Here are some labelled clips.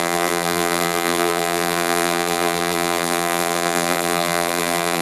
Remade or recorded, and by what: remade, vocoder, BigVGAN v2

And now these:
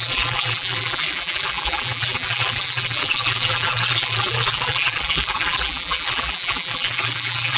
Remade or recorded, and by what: remade, vocoder, BigVGAN v2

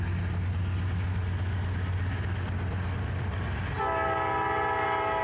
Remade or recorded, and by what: recorded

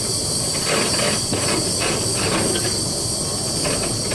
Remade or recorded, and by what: recorded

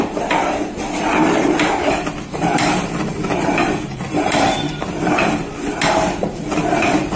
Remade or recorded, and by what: remade, vocoder, BigVGAN v2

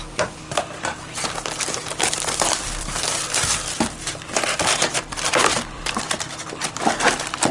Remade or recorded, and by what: remade, vocoder, BigVGAN v2